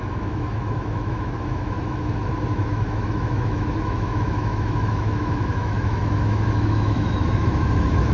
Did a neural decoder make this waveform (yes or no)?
yes